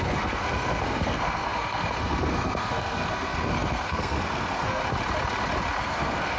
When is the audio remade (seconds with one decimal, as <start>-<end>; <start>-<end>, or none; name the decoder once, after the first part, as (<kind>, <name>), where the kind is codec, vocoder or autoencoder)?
0.0-4.8 (codec, SNAC); 5.8-6.4